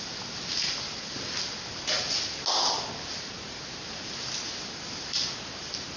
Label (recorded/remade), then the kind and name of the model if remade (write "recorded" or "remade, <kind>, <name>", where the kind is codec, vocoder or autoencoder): recorded